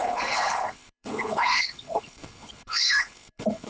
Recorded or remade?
remade